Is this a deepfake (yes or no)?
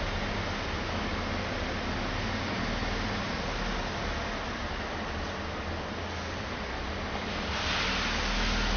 no